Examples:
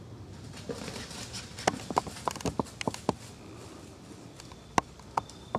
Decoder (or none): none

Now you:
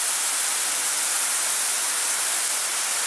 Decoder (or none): none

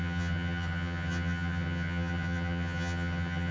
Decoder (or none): vocoder, HiFi-GAN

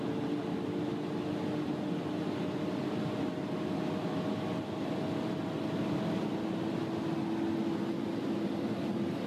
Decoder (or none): none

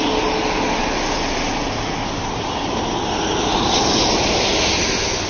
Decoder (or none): none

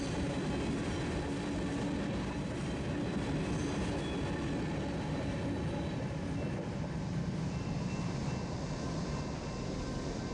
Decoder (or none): none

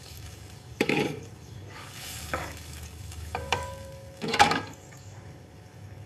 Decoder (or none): codec, DAC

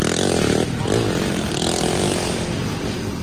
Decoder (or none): none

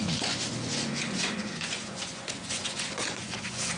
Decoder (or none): vocoder, Vocos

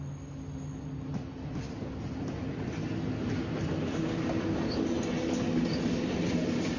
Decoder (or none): none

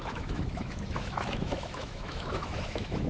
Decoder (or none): autoencoder, DAC-VAE